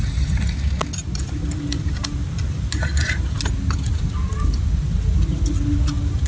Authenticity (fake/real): real